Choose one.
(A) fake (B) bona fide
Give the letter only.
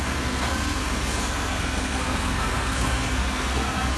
A